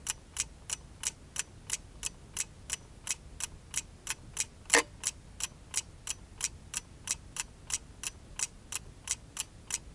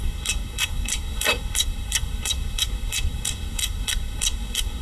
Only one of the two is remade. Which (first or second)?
second